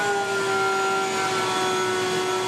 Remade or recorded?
recorded